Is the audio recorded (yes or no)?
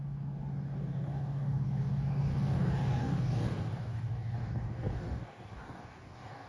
no